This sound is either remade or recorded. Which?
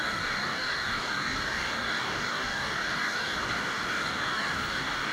remade